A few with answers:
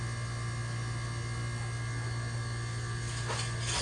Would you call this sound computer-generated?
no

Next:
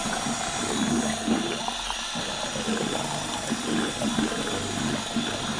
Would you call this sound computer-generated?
no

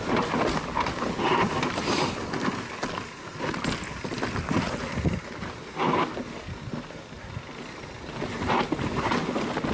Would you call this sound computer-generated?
no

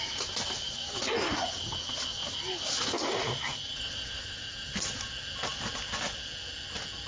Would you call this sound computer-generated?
no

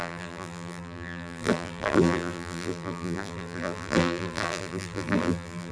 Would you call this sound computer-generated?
yes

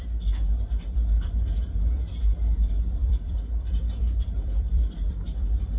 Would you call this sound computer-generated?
yes